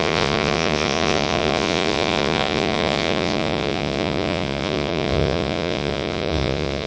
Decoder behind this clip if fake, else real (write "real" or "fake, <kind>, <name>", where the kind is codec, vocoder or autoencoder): fake, vocoder, Vocos